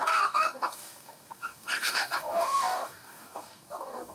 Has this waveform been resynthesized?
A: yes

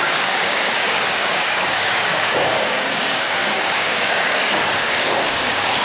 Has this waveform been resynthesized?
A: yes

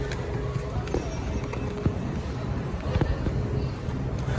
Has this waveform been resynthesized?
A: no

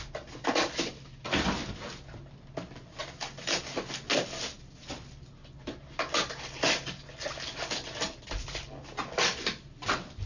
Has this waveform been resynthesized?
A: no